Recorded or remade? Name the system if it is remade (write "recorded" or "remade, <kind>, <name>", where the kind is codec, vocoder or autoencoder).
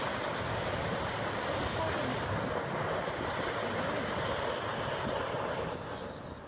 recorded